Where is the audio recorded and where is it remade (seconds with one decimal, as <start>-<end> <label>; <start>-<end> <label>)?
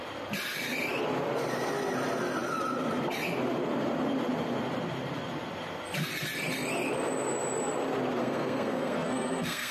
0.0-8.2 recorded; 8.2-9.7 remade